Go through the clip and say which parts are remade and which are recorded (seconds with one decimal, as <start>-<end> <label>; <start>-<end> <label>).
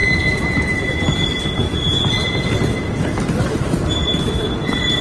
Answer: 0.0-2.1 remade; 2.1-5.0 recorded